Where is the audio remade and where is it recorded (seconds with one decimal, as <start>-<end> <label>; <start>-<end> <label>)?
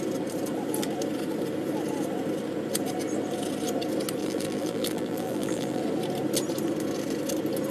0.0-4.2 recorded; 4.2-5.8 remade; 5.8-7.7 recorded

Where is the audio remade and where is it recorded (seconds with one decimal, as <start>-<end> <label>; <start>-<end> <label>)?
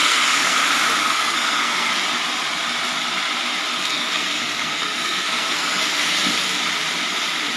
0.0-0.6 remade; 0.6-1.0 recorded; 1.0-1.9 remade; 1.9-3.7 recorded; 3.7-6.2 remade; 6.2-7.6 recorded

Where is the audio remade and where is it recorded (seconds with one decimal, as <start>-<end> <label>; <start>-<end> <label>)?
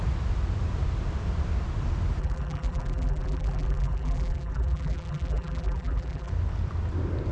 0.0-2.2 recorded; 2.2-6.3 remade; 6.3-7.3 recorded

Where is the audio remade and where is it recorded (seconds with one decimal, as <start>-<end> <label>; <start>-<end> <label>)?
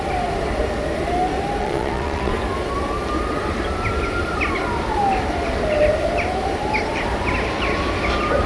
0.0-1.6 recorded; 1.6-2.3 remade; 2.3-8.5 recorded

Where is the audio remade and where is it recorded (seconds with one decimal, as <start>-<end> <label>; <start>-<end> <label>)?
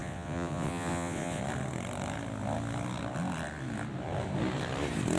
0.0-1.4 remade; 1.4-5.2 recorded